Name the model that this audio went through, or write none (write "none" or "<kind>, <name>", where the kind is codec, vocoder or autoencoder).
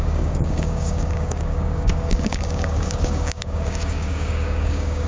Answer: codec, DAC